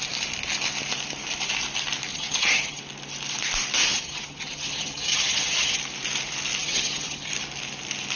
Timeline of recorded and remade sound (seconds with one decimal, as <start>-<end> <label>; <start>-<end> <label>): 0.0-2.1 recorded; 2.1-2.8 remade; 2.8-3.9 recorded; 3.9-5.8 remade; 5.8-6.6 recorded; 6.6-7.3 remade; 7.3-8.2 recorded